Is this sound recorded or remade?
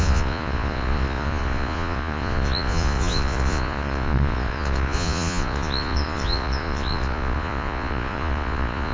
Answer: remade